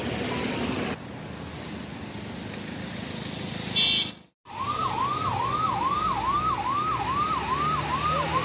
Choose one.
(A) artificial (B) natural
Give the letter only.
B